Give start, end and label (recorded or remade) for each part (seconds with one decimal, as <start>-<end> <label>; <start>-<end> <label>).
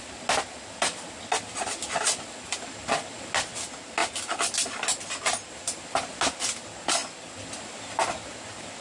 0.0-8.8 recorded